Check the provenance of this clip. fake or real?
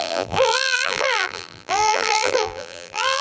fake